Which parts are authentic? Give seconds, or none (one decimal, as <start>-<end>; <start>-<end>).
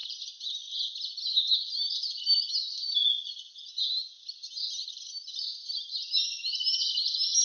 0.0-7.4